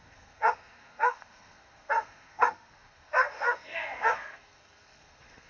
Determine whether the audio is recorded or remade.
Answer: remade